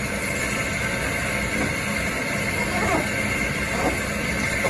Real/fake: real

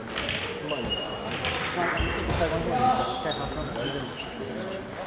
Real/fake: real